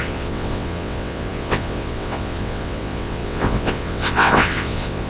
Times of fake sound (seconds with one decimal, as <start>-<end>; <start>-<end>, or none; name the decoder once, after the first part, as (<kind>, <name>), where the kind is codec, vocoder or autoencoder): 0.0-5.1 (vocoder, WaveNeXt)